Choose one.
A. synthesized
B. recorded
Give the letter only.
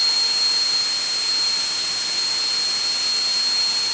B